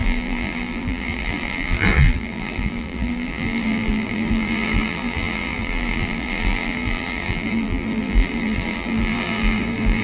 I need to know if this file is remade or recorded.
remade